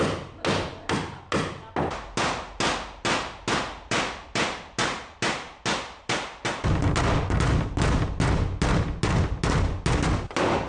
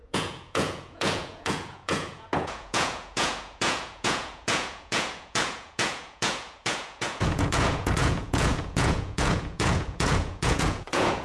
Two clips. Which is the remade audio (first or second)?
second